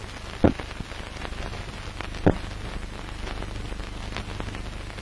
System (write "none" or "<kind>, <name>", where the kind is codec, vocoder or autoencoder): none